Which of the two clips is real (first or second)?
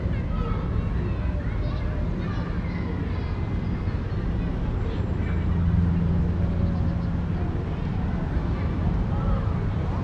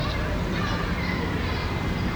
first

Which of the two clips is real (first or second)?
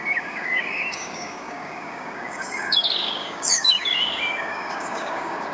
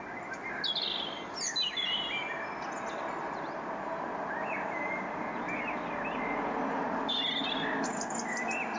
second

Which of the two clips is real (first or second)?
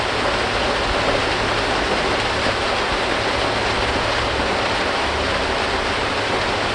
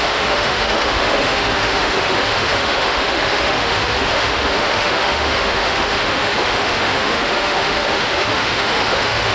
first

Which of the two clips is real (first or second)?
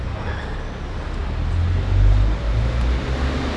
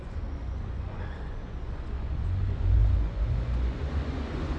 first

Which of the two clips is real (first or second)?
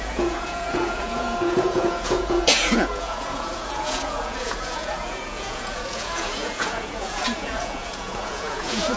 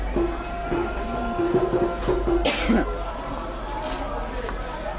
second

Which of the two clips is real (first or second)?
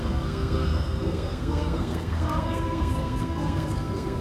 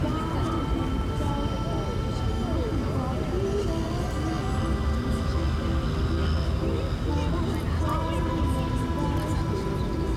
second